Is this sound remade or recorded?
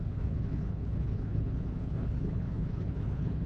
remade